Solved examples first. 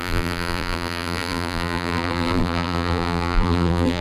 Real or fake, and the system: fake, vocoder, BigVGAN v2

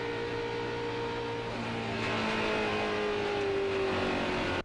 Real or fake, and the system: real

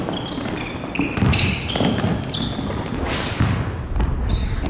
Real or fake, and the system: real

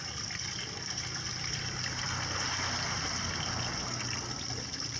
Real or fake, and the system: real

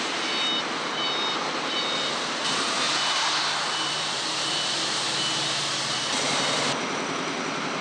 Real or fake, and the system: real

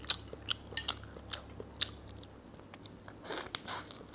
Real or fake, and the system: real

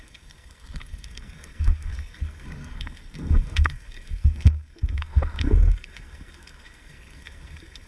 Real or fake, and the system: fake, codec, SNAC